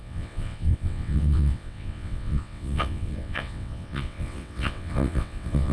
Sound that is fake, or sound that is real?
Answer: fake